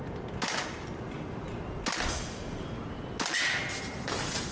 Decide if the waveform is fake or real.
real